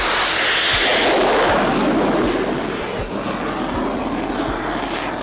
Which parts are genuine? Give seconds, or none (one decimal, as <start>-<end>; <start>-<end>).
0.0-5.2